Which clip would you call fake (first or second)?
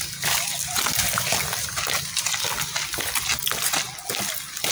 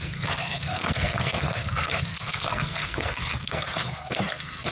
second